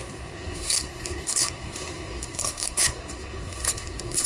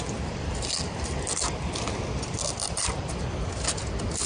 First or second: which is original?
second